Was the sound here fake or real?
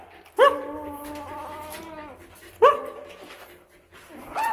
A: real